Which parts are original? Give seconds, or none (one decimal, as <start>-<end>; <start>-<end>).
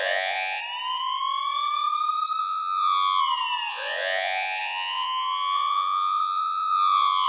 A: 0.6-2.4; 3.2-3.7